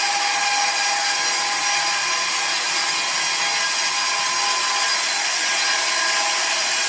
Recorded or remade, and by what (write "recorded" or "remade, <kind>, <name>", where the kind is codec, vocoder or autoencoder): recorded